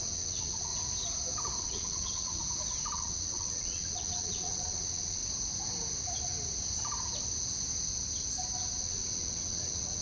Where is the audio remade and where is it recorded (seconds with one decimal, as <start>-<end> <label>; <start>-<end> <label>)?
0.0-0.7 remade; 0.7-1.6 recorded; 1.6-2.4 remade; 2.4-2.9 recorded; 2.9-5.2 remade; 5.2-8.8 recorded; 8.8-10.0 remade